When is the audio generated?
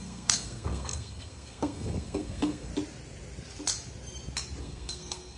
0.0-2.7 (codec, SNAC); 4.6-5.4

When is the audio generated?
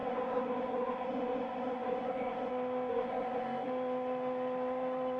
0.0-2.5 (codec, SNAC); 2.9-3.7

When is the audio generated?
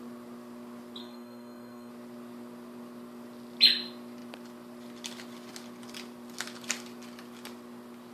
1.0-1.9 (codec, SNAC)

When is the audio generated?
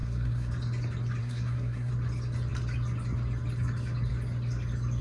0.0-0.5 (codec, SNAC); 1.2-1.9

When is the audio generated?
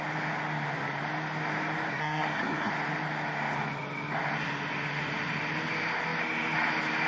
1.9-2.7 (codec, SNAC)